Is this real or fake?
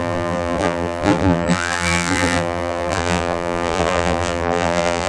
fake